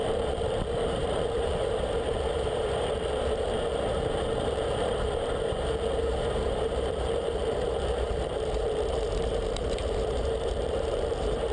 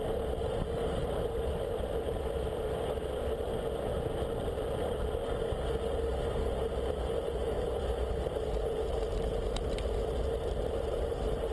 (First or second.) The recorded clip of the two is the second